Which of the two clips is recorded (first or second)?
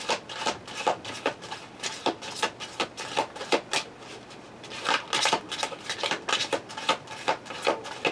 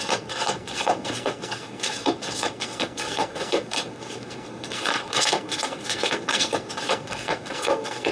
first